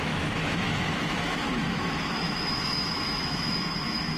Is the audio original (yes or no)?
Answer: no